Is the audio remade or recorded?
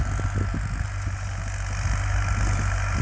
recorded